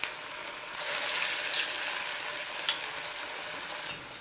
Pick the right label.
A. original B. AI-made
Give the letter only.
A